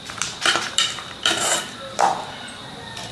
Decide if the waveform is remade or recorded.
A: remade